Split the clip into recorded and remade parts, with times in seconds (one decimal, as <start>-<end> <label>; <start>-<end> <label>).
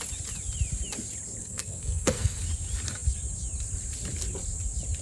0.0-1.4 recorded; 1.4-2.4 remade; 2.4-5.0 recorded